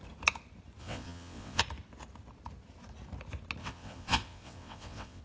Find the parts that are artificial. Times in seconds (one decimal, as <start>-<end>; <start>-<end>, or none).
0.8-1.6; 3.6-5.2